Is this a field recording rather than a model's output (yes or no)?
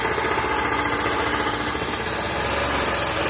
yes